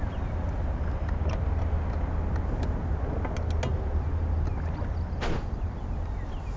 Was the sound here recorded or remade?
recorded